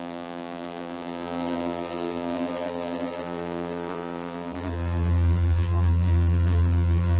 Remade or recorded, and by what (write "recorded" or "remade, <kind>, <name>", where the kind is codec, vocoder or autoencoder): remade, vocoder, BigVGAN v2